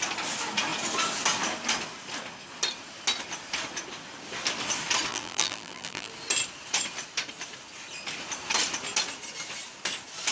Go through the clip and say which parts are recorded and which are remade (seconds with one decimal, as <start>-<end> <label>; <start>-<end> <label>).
0.0-5.1 recorded; 5.1-6.1 remade; 6.1-10.3 recorded

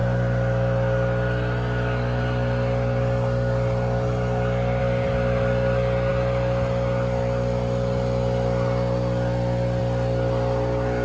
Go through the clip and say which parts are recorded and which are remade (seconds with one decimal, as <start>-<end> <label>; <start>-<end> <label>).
0.0-11.0 recorded

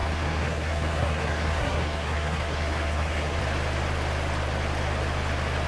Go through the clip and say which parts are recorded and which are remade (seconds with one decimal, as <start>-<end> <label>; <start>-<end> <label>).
0.0-3.4 remade; 3.4-5.7 recorded

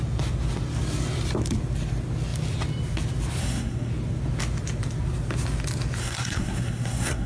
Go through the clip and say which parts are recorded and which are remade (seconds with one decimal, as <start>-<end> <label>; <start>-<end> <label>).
0.0-3.4 recorded; 3.4-3.9 remade; 3.9-6.0 recorded; 6.0-7.3 remade